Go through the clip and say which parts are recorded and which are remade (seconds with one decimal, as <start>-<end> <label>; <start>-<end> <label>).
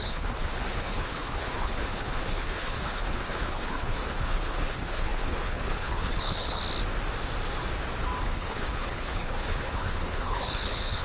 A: 0.0-6.6 remade; 6.6-8.2 recorded; 8.2-11.0 remade